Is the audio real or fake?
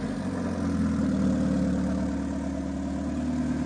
real